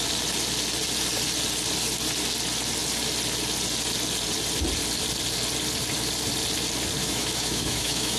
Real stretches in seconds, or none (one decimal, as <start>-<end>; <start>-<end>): 0.0-7.0